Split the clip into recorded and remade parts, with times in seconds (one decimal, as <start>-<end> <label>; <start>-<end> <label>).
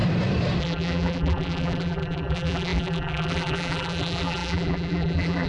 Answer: 0.0-0.6 recorded; 0.6-5.5 remade